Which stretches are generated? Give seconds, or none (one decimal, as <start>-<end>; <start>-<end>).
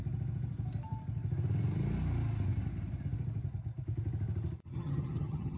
4.7-5.6